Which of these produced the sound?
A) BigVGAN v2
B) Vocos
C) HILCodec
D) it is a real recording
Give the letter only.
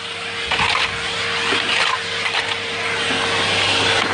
D